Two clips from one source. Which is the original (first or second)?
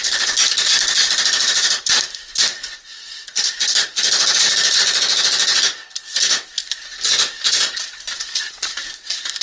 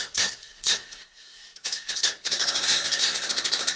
first